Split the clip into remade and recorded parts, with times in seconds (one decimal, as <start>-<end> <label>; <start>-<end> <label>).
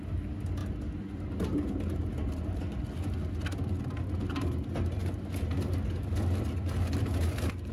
0.0-7.7 recorded